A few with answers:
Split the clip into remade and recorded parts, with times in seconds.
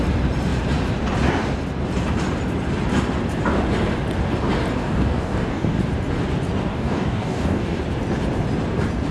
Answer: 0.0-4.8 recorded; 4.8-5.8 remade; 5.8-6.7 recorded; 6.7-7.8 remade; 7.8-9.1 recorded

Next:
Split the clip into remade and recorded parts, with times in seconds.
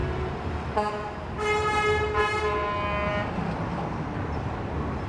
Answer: 0.0-5.1 recorded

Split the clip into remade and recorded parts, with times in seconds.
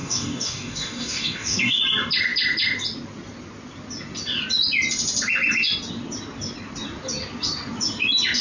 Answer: 0.0-1.8 remade; 1.8-8.4 recorded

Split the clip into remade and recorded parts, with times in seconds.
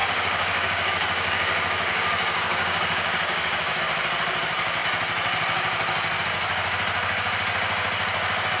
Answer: 0.0-3.8 remade; 3.8-8.6 recorded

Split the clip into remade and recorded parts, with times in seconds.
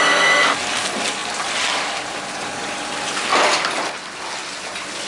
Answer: 0.0-5.1 recorded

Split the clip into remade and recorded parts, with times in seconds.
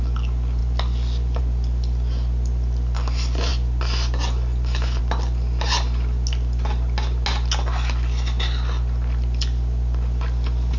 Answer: 0.0-10.8 recorded